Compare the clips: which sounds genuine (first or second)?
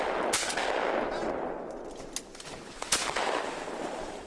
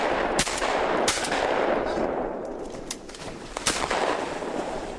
first